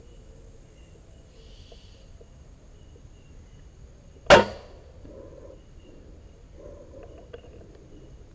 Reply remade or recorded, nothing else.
recorded